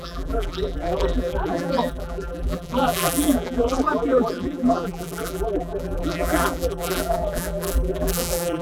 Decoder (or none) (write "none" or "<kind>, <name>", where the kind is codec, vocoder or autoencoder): vocoder, BigVGAN v2